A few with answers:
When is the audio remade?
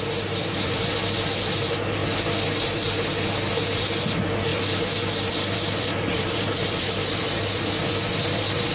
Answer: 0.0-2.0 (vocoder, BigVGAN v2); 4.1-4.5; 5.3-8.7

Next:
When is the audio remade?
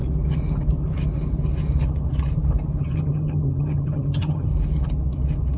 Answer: 2.8-4.5 (vocoder, HiFi-GAN)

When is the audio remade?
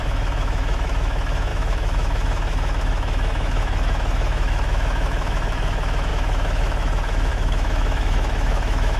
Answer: 0.0-9.0 (autoencoder, DAC-VAE)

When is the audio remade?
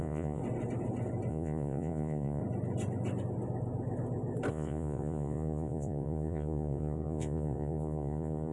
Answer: 0.0-0.4 (vocoder, Vocos); 1.3-2.4; 4.5-8.5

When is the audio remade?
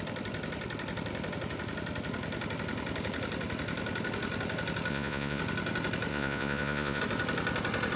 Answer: 4.9-5.4 (vocoder, Vocos); 6.1-7.0